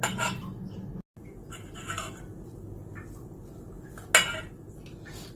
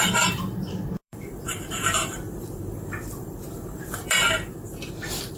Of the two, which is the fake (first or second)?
second